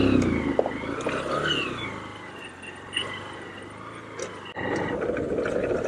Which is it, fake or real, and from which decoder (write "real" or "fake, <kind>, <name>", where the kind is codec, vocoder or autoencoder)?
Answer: real